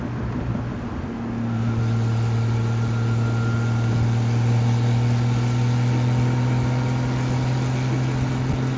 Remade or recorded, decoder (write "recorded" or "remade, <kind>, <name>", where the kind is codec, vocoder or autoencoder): recorded